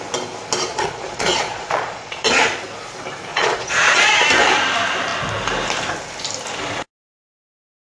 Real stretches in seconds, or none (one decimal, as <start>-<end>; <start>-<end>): 0.0-0.7; 2.4-3.3; 4.2-7.8